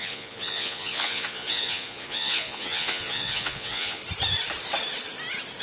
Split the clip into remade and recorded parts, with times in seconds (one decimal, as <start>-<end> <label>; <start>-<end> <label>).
0.0-4.0 remade; 4.0-5.6 recorded